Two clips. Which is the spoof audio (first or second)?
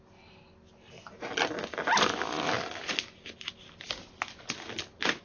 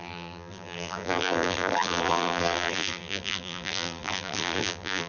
second